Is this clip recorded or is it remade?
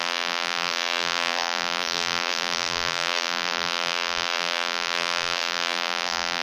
remade